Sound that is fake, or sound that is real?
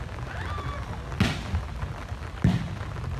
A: real